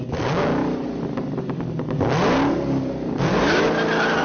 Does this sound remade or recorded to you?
recorded